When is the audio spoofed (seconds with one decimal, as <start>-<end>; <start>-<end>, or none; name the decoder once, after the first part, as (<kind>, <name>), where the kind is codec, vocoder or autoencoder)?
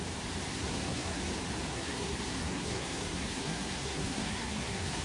0.5-1.2 (codec, SNAC); 1.7-5.0